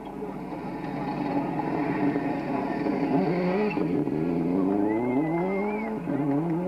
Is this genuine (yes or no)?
yes